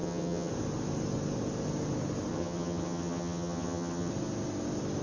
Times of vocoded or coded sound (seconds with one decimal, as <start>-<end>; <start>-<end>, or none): 0.0-0.5; 2.3-4.1